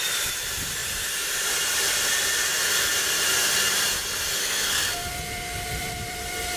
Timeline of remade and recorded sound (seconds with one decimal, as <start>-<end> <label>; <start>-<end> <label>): 0.0-4.4 recorded; 4.4-5.1 remade; 5.1-6.6 recorded